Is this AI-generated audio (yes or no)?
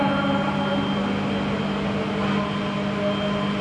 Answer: no